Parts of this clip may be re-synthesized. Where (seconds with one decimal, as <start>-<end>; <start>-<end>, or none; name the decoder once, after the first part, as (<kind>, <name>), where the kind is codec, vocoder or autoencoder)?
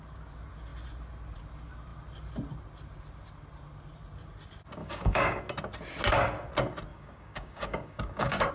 4.8-5.4 (codec, DAC); 6.9-8.5